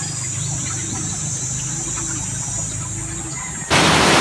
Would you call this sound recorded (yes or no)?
yes